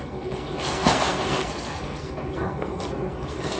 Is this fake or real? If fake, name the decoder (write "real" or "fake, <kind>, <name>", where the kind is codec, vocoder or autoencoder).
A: fake, codec, SNAC